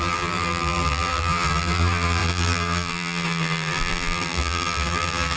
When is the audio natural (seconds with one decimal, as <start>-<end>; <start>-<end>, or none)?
none